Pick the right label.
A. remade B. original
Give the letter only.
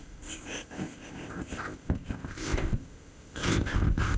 A